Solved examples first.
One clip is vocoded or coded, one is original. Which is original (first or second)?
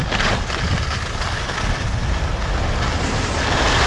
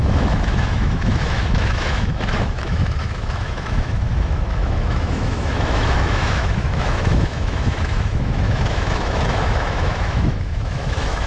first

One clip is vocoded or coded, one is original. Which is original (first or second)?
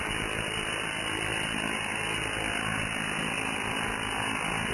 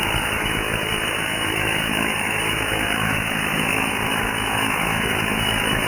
first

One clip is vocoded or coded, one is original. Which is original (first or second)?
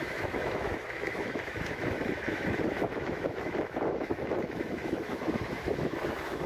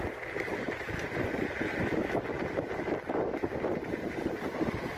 second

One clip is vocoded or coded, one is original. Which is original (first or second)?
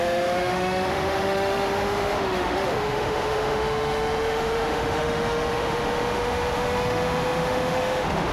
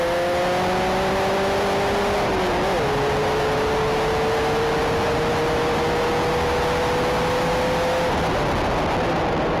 second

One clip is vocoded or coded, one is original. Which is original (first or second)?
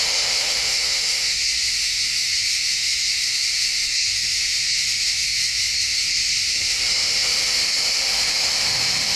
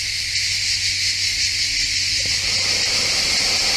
second